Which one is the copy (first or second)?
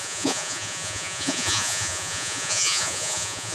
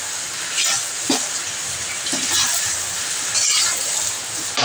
first